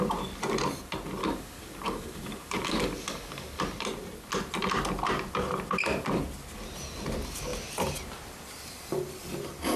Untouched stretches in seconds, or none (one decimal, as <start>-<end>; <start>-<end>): 0.0-1.2; 3.6-9.8